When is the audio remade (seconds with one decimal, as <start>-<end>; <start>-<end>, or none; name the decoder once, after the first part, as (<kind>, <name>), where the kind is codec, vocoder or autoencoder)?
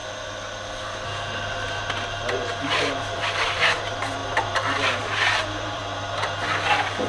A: 2.6-5.8 (vocoder, BigVGAN v2)